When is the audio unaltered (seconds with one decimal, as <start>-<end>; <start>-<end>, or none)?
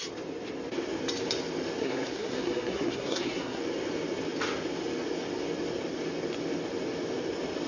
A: 0.0-1.8; 3.6-7.7